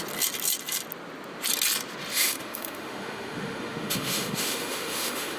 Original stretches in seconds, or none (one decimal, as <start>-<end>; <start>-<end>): 0.0-2.1